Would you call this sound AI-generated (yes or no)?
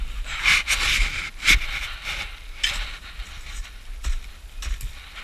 no